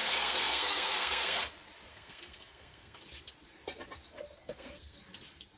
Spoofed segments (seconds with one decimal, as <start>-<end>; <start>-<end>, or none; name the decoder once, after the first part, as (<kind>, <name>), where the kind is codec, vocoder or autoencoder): 0.0-1.4 (codec, SNAC); 1.9-3.0; 4.4-5.0